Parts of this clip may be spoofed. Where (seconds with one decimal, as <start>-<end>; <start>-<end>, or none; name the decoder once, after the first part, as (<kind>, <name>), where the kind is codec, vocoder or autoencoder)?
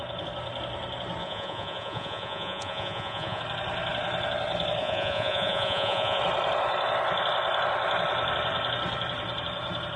1.2-3.4 (vocoder, Vocos); 4.8-6.2